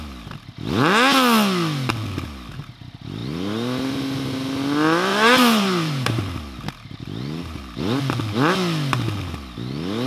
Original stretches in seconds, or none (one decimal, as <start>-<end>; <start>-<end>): 0.0-3.2; 4.0-5.1; 6.2-10.1